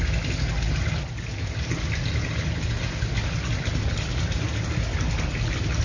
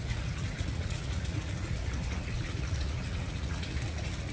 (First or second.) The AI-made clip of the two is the second